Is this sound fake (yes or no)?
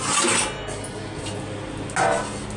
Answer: no